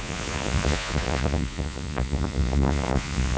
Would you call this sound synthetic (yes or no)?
yes